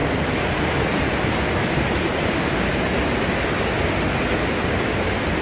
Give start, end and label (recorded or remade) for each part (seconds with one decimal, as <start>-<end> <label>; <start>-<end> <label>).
0.0-0.9 remade; 0.9-2.1 recorded; 2.1-3.1 remade; 3.1-5.4 recorded